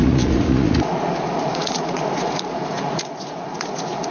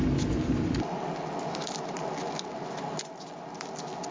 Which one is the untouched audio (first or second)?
second